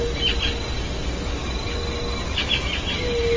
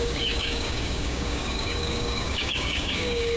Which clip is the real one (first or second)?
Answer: first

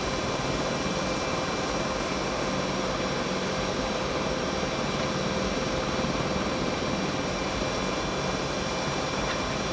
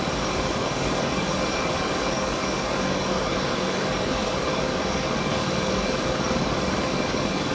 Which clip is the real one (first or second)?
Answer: first